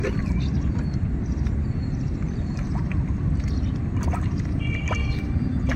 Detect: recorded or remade remade